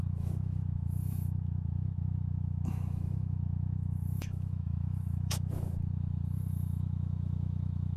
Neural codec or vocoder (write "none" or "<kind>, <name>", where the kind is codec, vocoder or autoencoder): autoencoder, DAC-VAE